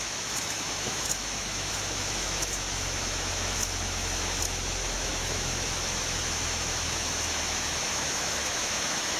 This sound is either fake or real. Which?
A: fake